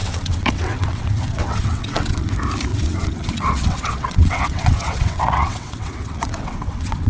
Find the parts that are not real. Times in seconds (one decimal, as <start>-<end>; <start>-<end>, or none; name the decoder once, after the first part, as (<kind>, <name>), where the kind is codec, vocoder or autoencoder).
0.0-2.3 (vocoder, WaveNeXt); 2.7-7.1